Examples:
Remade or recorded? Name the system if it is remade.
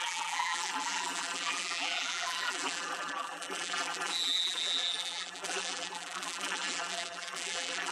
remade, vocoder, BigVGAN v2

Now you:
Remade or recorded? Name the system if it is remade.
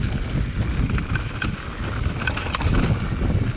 recorded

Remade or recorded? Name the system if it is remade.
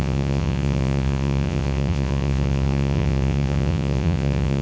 remade, vocoder, Vocos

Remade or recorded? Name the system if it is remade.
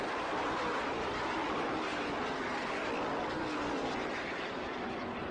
remade, vocoder, BigVGAN v2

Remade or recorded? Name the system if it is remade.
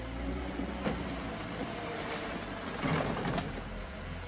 remade, vocoder, BigVGAN v2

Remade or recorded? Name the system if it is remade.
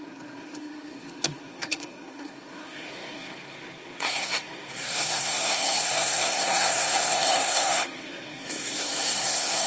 remade, codec, SNAC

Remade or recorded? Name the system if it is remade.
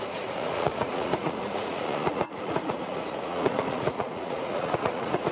remade, vocoder, Vocos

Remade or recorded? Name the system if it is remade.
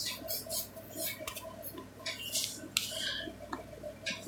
recorded